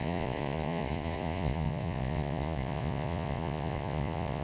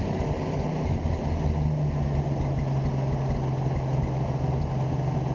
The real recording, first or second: second